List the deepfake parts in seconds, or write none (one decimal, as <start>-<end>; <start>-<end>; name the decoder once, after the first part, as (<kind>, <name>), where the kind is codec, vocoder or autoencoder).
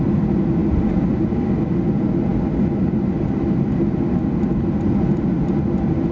0.6-1.2 (vocoder, BigVGAN v2)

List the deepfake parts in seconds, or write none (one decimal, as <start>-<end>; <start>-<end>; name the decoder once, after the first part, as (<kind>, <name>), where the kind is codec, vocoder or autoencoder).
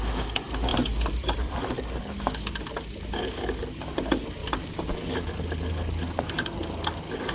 0.7-2.0 (vocoder, BigVGAN v2); 4.4-4.9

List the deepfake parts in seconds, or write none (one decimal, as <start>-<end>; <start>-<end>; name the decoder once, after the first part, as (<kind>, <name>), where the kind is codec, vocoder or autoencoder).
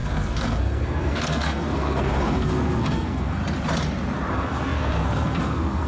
0.0-3.4 (codec, SNAC); 4.3-5.9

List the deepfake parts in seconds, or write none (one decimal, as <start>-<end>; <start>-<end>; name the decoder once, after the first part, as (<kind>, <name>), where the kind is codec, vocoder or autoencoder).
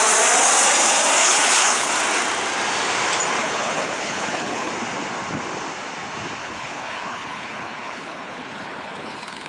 1.2-1.9 (codec, HILCodec); 3.4-4.7; 6.4-9.5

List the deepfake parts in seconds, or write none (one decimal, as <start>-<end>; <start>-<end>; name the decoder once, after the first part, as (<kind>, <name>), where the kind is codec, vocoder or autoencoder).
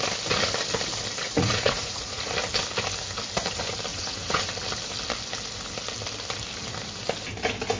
1.2-2.3 (vocoder, Vocos); 3.9-4.5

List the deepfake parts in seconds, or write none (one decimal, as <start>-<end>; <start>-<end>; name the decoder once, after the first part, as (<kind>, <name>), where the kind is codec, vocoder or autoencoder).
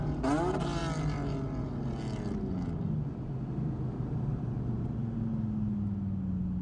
none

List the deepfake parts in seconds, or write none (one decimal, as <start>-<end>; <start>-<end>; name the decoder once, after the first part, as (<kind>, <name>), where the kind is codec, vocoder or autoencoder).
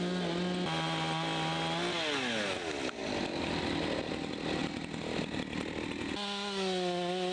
none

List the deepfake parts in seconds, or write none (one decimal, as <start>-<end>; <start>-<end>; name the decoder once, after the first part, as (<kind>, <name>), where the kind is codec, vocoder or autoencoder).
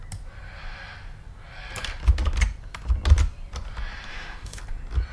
4.1-4.6 (autoencoder, DAC-VAE)